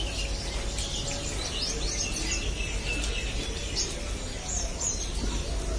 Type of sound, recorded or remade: recorded